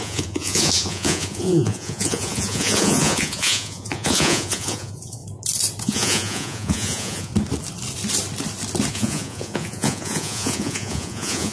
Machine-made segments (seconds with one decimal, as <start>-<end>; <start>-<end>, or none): 0.0-5.2; 5.8-7.3; 8.9-11.5